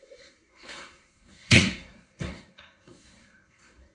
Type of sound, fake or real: fake